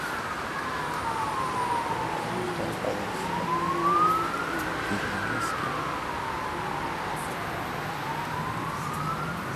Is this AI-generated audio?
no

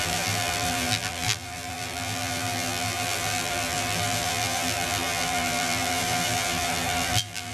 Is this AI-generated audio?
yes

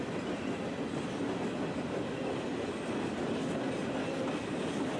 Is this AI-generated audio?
no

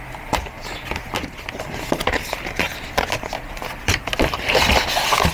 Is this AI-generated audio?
no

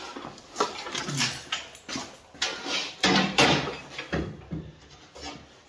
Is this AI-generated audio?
no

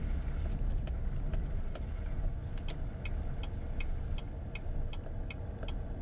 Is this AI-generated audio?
no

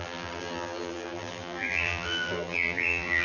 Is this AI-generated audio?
yes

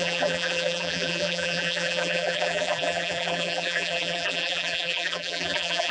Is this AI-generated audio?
yes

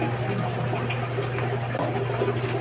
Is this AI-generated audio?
no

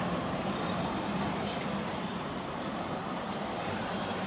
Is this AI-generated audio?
yes